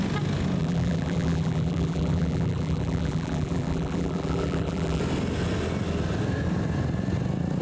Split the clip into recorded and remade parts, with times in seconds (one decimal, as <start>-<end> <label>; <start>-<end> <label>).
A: 0.0-0.6 recorded; 0.6-5.0 remade; 5.0-7.6 recorded